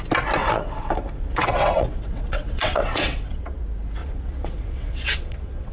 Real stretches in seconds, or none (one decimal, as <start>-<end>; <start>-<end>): 0.0-0.4; 3.6-4.0